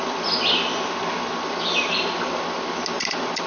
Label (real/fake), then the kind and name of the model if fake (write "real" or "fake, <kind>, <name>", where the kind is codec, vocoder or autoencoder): real